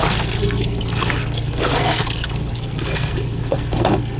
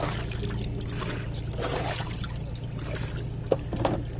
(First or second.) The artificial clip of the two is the first